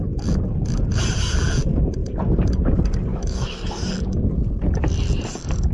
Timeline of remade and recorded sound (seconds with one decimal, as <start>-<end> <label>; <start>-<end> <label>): 0.0-3.1 recorded; 3.1-3.8 remade; 3.8-5.7 recorded

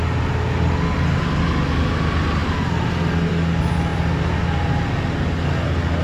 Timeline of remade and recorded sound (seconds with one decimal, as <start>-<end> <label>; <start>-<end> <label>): 0.0-6.0 recorded

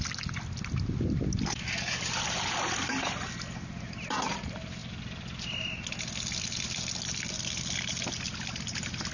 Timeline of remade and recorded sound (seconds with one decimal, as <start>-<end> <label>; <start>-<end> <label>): 0.0-9.1 recorded

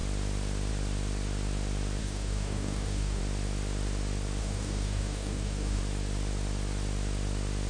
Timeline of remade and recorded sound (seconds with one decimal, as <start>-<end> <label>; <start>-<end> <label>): 0.0-2.0 recorded; 2.0-3.2 remade; 3.2-4.4 recorded; 4.4-5.8 remade; 5.8-7.7 recorded

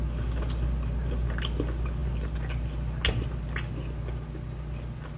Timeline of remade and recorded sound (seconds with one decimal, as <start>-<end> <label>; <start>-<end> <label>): 0.0-5.2 recorded